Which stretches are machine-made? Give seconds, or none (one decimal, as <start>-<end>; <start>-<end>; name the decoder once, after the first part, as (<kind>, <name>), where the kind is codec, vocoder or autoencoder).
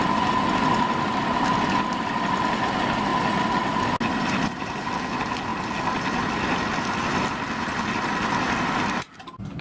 none